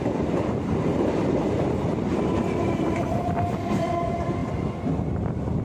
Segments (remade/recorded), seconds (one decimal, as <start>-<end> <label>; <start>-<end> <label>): 0.0-4.4 remade; 4.4-5.6 recorded